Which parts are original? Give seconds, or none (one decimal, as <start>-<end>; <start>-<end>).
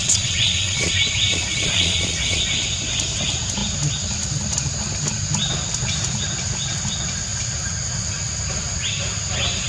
0.9-1.3; 2.4-9.7